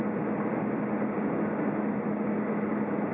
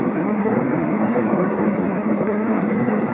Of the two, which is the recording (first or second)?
first